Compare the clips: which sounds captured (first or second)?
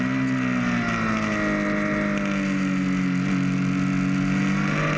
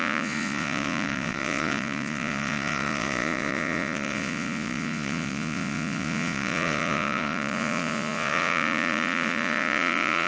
first